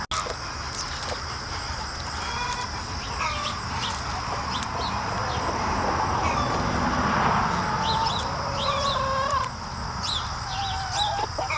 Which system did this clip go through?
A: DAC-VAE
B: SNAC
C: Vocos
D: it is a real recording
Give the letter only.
D